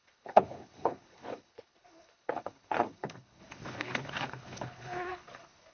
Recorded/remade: remade